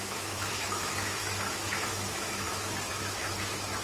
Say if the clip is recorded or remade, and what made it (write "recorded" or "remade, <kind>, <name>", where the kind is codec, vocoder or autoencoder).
remade, autoencoder, DAC-VAE